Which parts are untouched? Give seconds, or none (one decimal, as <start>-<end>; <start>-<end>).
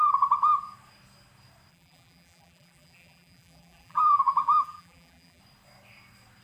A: 0.0-1.7; 5.4-6.4